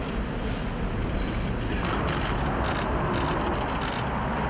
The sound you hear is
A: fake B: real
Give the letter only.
B